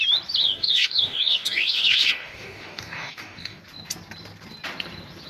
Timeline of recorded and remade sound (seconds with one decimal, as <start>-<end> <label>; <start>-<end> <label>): 0.0-0.4 recorded; 0.4-3.6 remade; 3.6-5.3 recorded